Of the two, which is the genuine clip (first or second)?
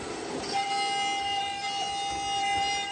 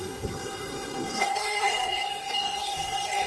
first